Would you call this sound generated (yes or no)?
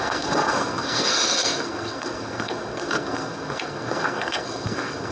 yes